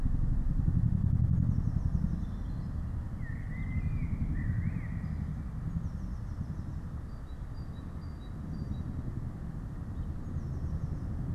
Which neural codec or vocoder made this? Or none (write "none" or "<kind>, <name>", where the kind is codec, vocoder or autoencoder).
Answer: none